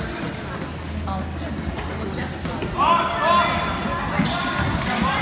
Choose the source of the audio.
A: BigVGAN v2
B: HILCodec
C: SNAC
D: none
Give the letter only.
D